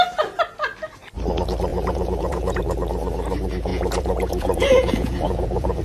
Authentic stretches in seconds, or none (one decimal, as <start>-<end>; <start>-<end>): 0.0-1.7; 2.6-3.7